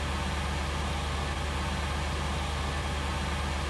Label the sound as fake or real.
real